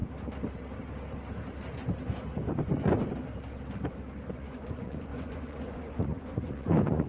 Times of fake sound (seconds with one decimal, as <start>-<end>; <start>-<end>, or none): 4.3-7.1